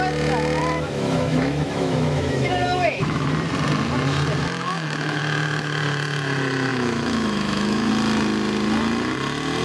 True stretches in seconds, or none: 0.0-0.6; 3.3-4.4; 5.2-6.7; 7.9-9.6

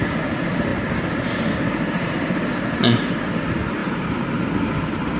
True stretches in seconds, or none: 0.0-5.2

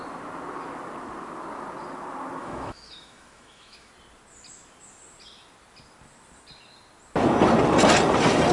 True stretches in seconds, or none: 0.0-2.4; 3.9-8.5

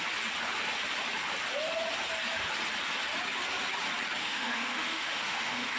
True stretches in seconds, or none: 0.0-4.2

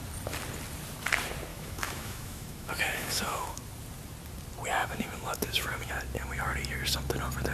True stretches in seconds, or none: 0.0-1.5; 3.6-4.8; 5.9-7.5